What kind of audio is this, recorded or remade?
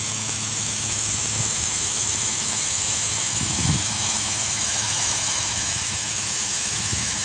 remade